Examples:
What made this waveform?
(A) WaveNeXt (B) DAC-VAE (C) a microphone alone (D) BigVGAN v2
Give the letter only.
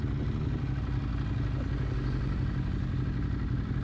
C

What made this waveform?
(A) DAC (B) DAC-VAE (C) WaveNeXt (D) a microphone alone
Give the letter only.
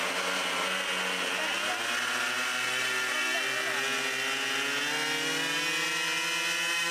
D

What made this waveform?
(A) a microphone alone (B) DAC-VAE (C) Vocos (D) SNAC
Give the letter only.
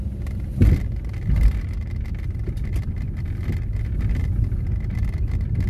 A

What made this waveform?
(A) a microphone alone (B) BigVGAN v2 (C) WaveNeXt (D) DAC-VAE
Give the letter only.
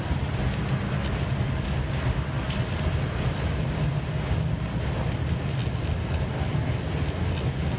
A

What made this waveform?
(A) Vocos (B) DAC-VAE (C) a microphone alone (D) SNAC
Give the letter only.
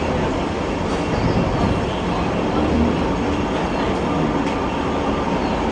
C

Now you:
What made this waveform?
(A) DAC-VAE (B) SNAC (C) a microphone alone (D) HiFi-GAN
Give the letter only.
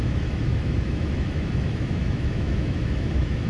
A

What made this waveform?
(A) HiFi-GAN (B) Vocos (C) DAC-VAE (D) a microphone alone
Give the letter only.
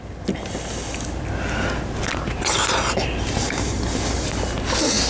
D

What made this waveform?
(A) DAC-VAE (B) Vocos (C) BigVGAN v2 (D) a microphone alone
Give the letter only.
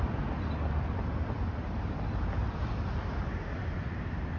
D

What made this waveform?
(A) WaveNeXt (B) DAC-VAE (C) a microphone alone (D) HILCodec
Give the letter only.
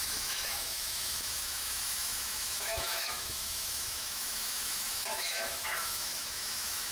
B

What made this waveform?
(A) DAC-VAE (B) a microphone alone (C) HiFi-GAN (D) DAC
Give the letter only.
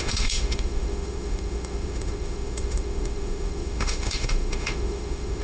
A